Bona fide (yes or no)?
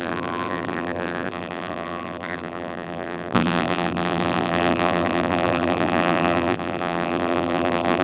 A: no